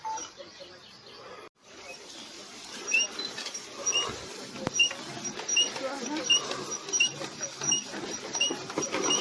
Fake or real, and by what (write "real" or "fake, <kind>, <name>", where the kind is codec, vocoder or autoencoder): real